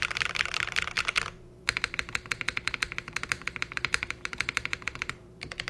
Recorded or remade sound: remade